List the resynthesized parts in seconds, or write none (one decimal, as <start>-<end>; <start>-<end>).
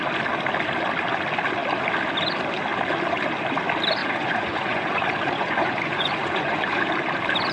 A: 4.0-6.9